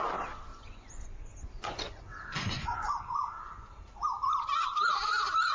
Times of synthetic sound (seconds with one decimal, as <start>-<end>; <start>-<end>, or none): 0.5-3.8